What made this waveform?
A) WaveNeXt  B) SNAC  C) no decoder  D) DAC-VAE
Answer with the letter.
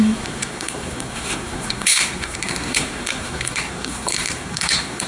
B